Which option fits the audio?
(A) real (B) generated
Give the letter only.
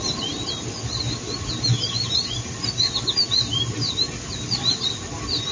A